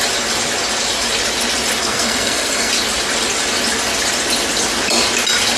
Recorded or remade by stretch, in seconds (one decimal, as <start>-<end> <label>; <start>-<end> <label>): 0.0-1.8 recorded; 1.8-2.7 remade; 2.7-5.6 recorded